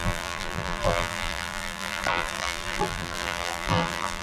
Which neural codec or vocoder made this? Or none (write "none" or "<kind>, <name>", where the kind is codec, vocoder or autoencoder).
vocoder, BigVGAN v2